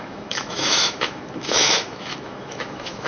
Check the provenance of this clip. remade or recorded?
remade